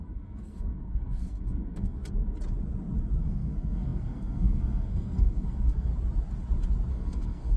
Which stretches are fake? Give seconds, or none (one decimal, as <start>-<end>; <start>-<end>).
0.0-2.0; 3.2-5.9; 6.9-7.6